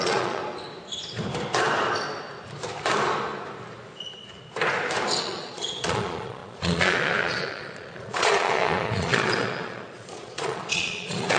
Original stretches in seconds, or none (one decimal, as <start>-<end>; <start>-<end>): 0.4-5.2